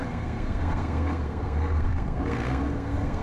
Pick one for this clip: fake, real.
fake